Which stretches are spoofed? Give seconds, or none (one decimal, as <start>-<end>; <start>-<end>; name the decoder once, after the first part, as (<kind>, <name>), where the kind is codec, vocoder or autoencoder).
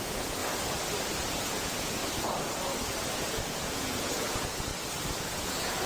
0.0-0.4 (vocoder, Vocos); 1.4-2.0; 3.1-4.7; 5.2-5.9